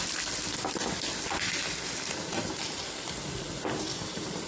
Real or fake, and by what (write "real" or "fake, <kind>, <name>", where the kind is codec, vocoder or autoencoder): real